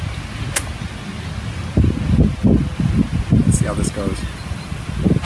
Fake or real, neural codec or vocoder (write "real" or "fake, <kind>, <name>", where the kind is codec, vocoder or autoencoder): real